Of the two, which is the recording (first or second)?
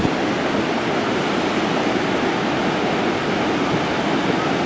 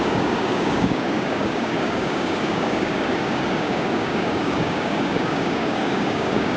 first